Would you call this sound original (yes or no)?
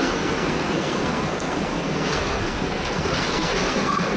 no